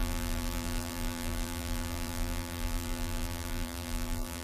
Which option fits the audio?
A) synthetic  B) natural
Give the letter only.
A